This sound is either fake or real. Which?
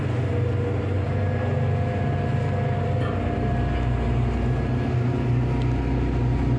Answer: real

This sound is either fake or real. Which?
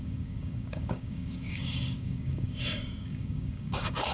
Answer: fake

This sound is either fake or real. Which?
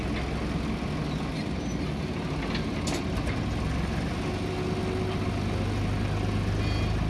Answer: real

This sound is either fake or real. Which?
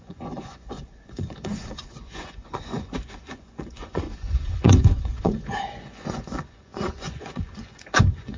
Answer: fake